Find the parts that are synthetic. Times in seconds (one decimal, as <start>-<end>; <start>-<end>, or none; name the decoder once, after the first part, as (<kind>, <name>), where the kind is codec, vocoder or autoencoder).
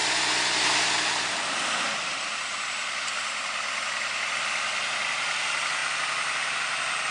0.0-4.2 (vocoder, BigVGAN v2)